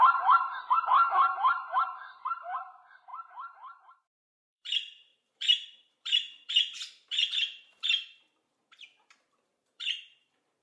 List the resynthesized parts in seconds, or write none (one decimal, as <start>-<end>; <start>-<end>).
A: 0.0-3.1; 3.9-10.6